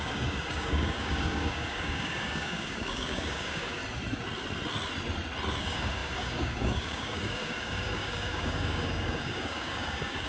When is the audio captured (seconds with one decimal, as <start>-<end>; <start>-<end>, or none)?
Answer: 3.8-5.6